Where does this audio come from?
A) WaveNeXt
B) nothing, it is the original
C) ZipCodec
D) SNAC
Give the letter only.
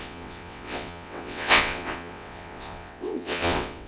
A